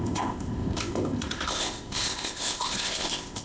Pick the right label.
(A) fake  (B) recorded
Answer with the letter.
A